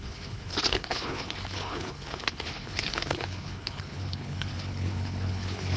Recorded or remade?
remade